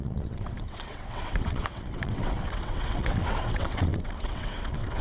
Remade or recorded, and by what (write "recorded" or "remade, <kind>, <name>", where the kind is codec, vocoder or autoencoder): remade, vocoder, WaveNeXt